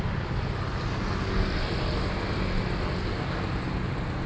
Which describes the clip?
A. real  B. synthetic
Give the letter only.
A